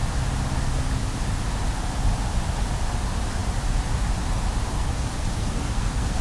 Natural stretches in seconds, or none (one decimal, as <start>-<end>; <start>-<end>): 0.0-4.7